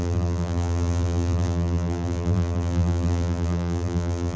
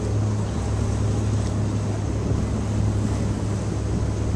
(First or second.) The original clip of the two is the second